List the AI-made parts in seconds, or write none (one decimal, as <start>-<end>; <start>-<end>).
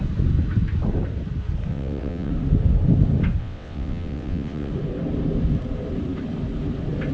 1.7-2.3; 3.4-4.7